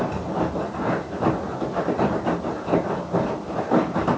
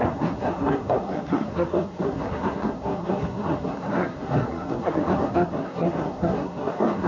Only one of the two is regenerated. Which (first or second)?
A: second